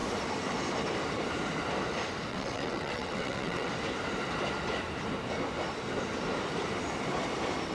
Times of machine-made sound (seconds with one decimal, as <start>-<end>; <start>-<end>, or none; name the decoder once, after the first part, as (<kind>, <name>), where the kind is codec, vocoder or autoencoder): 2.3-3.7 (vocoder, WaveNeXt)